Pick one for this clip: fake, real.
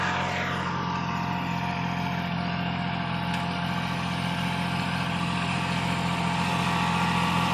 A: real